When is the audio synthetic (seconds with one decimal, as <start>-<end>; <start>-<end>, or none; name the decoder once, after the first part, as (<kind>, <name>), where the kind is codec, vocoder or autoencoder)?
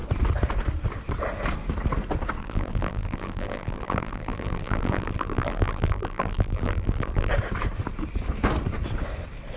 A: 2.4-7.3 (vocoder, BigVGAN v2)